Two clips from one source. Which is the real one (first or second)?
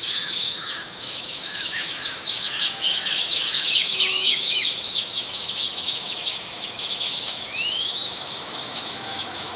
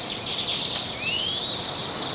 second